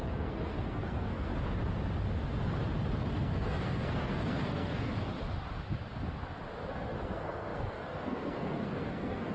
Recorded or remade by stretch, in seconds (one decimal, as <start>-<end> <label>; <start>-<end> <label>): 0.0-1.3 remade; 1.3-3.1 recorded; 3.1-4.9 remade; 4.9-6.7 recorded; 6.7-9.3 remade